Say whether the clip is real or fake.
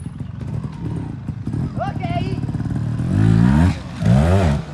real